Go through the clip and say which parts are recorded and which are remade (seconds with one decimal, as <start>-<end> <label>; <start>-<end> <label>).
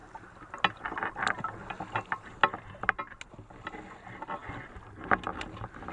0.0-5.9 recorded